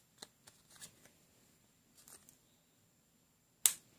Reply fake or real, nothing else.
real